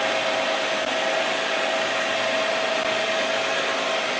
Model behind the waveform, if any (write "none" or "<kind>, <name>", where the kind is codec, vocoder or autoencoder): none